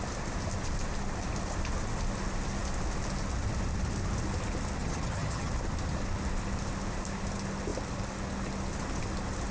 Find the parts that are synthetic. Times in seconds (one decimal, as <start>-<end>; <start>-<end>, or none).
4.8-5.5